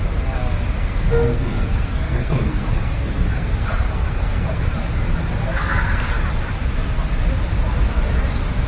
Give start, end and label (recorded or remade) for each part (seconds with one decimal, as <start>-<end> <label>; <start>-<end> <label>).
0.0-0.8 recorded; 0.8-4.7 remade; 4.7-5.4 recorded; 5.4-6.2 remade; 6.2-8.7 recorded